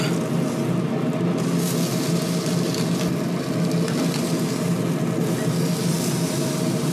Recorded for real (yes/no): yes